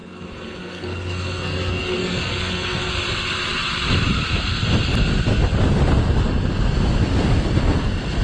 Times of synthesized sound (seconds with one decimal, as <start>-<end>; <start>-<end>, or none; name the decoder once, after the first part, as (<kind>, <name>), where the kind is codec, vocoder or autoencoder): 0.0-2.9 (codec, SNAC)

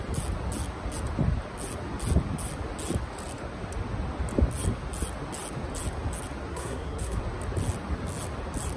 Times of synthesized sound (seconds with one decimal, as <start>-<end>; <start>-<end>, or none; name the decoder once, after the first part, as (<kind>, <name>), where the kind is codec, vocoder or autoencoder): 6.5-7.2 (codec, SNAC)